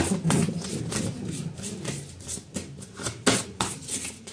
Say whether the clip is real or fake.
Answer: real